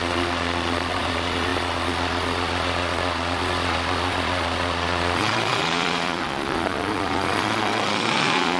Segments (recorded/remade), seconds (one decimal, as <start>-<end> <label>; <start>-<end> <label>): 0.0-8.6 remade

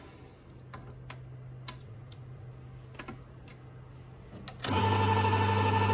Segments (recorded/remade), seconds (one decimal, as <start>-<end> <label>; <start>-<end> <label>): 0.0-1.8 recorded; 1.8-2.5 remade; 2.5-5.9 recorded

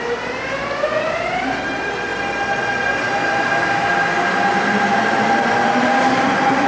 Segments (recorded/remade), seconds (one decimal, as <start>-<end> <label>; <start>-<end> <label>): 0.0-6.7 recorded

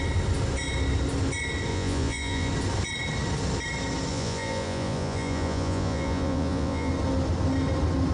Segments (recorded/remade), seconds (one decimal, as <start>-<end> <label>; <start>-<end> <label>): 0.0-1.7 recorded; 1.7-2.5 remade; 2.5-4.1 recorded; 4.1-6.9 remade; 6.9-8.1 recorded

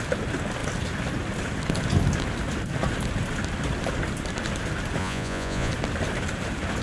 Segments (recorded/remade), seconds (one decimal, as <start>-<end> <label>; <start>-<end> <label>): 0.0-5.0 recorded; 5.0-5.7 remade; 5.7-6.8 recorded

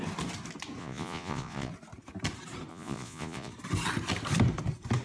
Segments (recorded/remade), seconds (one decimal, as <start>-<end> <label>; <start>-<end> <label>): 0.0-0.8 recorded; 0.8-1.7 remade; 1.7-2.7 recorded; 2.7-3.5 remade; 3.5-5.0 recorded

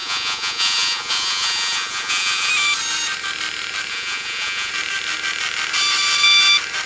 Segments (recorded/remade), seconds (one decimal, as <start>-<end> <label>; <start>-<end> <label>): 0.0-2.5 remade; 2.5-3.9 recorded; 3.9-4.7 remade; 4.7-6.9 recorded

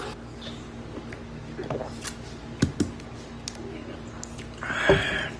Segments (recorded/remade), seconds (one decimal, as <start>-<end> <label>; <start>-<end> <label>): 0.0-5.4 recorded